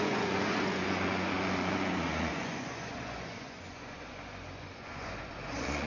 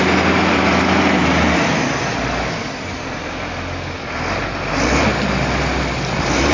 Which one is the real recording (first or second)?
second